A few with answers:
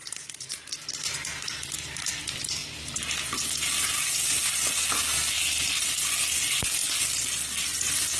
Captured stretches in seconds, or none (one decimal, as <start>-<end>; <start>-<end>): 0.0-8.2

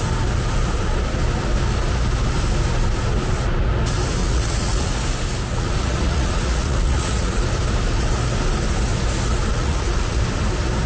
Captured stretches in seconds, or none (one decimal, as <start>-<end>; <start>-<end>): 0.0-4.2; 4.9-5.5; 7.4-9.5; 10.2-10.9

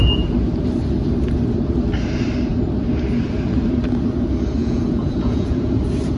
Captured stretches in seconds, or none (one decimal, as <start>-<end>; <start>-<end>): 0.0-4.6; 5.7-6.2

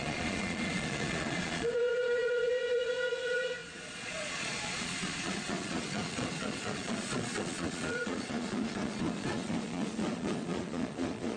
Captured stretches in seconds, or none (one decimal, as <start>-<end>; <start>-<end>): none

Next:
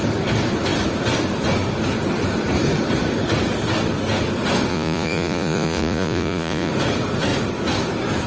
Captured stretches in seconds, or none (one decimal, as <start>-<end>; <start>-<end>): 0.0-4.7; 6.7-8.3

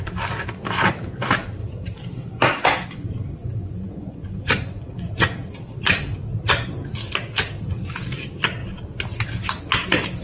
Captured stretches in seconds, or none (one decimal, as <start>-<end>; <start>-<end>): 0.0-3.4; 5.1-10.2

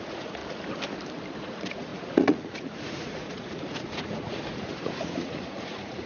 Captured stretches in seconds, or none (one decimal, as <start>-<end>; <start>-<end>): 0.4-1.4